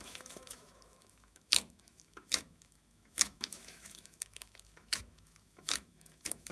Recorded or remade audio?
remade